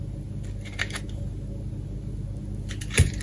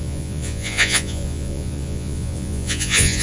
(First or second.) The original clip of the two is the first